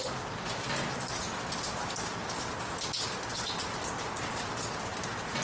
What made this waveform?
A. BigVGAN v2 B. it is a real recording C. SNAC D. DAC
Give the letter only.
B